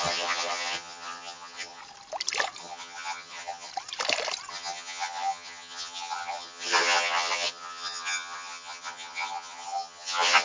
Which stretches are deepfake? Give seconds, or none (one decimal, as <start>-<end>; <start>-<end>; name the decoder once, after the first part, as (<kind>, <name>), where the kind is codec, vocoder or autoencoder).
0.0-1.8 (vocoder, HiFi-GAN); 2.6-3.7; 4.5-10.4